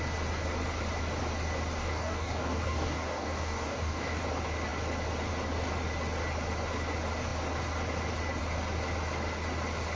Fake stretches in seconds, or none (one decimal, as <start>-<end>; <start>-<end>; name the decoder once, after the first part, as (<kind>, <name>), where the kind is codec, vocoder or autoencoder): 1.8-4.2 (codec, DAC)